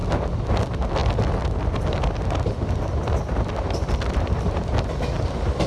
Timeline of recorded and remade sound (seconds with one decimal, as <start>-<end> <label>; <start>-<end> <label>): 0.0-5.7 recorded

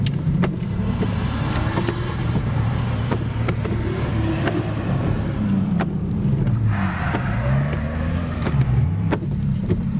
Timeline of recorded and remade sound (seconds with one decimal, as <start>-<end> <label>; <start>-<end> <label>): 0.0-4.1 remade; 4.1-8.1 recorded; 8.1-10.0 remade

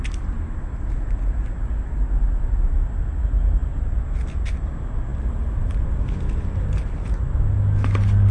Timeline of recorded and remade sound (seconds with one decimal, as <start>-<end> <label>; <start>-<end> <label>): 0.0-5.1 recorded; 5.1-5.8 remade; 5.8-8.3 recorded

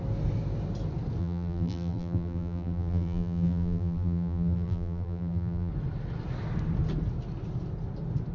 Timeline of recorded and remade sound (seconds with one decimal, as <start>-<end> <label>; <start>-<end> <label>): 0.0-1.2 recorded; 1.2-5.7 remade; 5.7-8.3 recorded

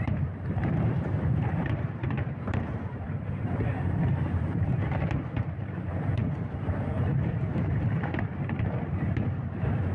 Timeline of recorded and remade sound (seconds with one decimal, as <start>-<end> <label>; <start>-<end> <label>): 0.0-9.9 remade

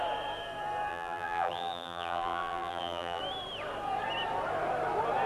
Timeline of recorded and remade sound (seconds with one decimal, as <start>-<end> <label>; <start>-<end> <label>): 0.0-0.9 recorded; 0.9-3.2 remade; 3.2-5.3 recorded

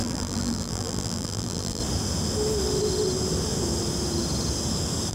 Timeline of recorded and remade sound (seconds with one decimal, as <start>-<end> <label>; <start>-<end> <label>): 0.0-1.8 remade; 1.8-5.1 recorded